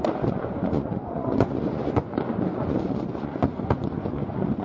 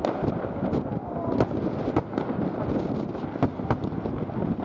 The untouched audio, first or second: second